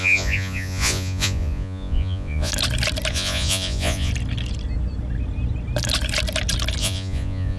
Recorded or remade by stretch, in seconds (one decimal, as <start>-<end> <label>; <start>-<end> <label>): 0.0-2.5 remade; 2.5-3.1 recorded; 3.1-4.1 remade; 4.1-6.8 recorded; 6.8-7.6 remade